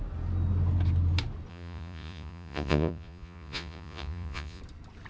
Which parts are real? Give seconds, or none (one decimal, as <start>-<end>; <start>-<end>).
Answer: 0.0-1.5; 4.6-5.1